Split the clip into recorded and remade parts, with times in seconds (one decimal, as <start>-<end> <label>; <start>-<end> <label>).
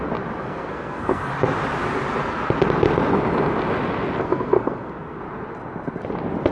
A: 0.0-0.4 recorded; 0.4-1.3 remade; 1.3-4.2 recorded; 4.2-5.2 remade; 5.2-6.5 recorded